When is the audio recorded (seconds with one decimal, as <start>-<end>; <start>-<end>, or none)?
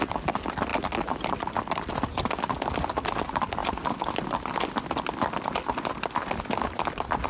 0.0-7.3